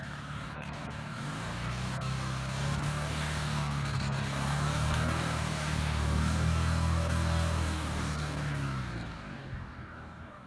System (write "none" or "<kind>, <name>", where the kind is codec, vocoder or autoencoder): codec, DAC